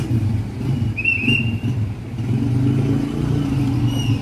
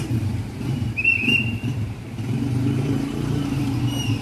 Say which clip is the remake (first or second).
second